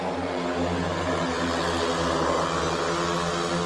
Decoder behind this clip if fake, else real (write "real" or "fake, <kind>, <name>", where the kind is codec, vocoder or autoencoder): real